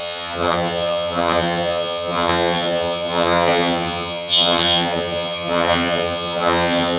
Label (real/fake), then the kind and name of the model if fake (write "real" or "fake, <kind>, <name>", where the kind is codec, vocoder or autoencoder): fake, vocoder, HiFi-GAN